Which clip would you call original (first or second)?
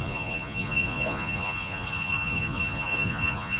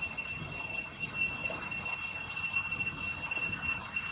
second